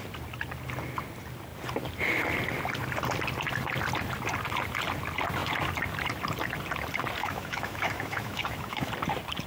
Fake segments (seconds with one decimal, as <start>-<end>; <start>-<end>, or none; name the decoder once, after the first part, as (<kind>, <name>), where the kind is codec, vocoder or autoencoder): 7.2-8.9 (autoencoder, DAC-VAE)